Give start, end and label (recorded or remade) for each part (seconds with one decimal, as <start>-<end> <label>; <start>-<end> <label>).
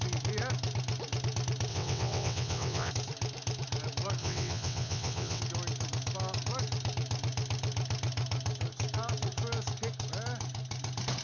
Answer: 0.0-1.7 recorded; 1.7-2.9 remade; 2.9-4.2 recorded; 4.2-5.4 remade; 5.4-11.2 recorded